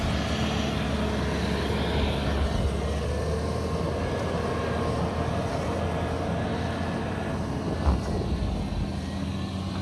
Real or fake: real